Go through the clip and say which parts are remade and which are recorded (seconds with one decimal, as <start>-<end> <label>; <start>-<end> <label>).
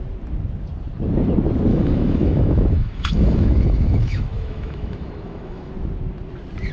0.0-1.7 recorded; 1.7-5.7 remade; 5.7-6.7 recorded